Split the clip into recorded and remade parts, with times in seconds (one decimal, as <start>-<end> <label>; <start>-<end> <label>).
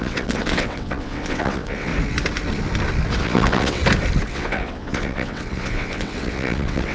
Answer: 0.0-1.9 remade; 1.9-3.2 recorded; 3.2-3.8 remade; 3.8-4.3 recorded; 4.3-6.9 remade